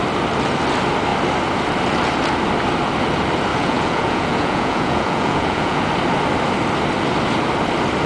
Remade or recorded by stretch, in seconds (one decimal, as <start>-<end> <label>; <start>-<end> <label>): 0.0-3.5 recorded; 3.5-5.9 remade; 5.9-8.1 recorded